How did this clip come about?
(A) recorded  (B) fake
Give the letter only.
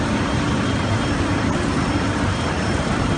B